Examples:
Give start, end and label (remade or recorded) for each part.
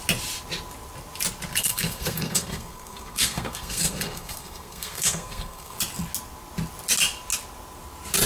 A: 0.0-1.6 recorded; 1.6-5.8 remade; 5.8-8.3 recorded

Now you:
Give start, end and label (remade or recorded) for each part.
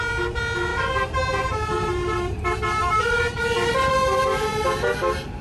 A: 0.0-0.7 recorded; 0.7-3.9 remade; 3.9-5.4 recorded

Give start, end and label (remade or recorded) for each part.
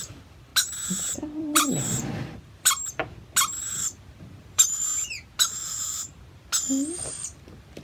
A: 0.0-0.5 remade; 0.5-1.4 recorded; 1.4-3.0 remade; 3.0-3.7 recorded; 3.7-4.9 remade; 4.9-6.6 recorded; 6.6-7.8 remade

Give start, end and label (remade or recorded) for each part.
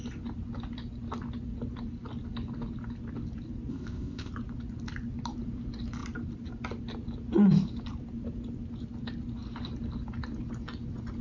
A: 0.0-3.7 recorded; 3.7-4.3 remade; 4.3-11.2 recorded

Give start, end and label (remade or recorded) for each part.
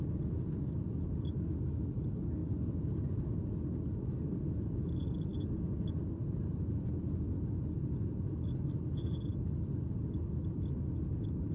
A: 0.0-11.5 recorded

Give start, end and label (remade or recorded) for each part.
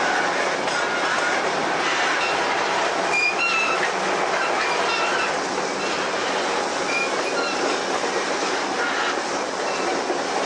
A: 0.0-2.1 recorded; 2.1-3.7 remade; 3.7-10.5 recorded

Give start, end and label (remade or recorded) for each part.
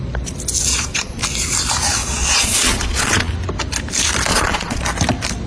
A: 0.0-0.7 recorded; 0.7-1.2 remade; 1.2-2.0 recorded; 2.0-3.3 remade; 3.3-4.3 recorded; 4.3-4.8 remade; 4.8-5.5 recorded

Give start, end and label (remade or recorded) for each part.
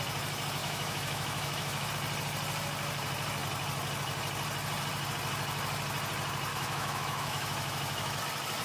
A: 0.0-0.6 recorded; 0.6-1.9 remade; 1.9-6.5 recorded; 6.5-8.2 remade; 8.2-8.6 recorded